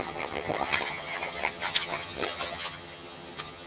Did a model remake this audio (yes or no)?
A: yes